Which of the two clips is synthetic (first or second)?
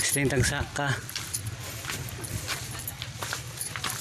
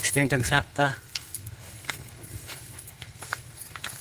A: second